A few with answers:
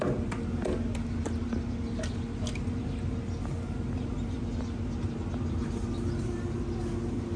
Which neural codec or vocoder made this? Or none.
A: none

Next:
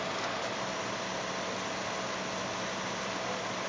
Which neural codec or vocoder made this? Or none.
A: none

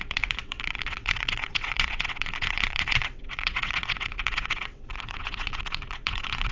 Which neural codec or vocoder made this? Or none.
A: vocoder, WaveNeXt